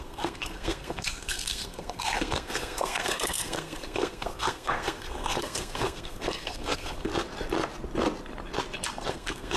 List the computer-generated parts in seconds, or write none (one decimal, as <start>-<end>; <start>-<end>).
0.0-7.1; 9.1-9.6